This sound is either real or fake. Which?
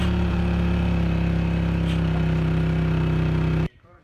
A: fake